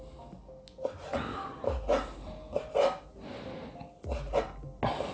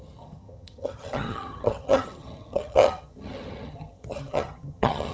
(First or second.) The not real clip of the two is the second